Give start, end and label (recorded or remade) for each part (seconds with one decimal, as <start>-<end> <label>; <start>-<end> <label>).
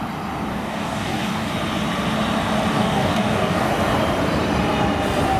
0.0-0.5 recorded; 0.5-1.5 remade; 1.5-2.7 recorded; 2.7-3.7 remade; 3.7-5.4 recorded